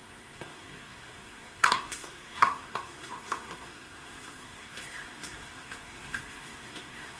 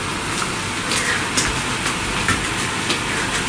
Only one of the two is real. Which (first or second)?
second